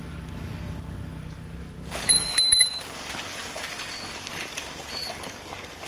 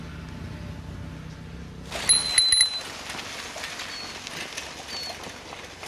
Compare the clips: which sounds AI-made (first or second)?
first